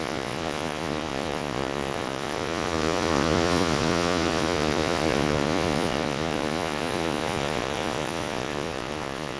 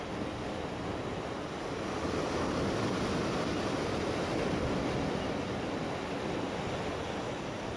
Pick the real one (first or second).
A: second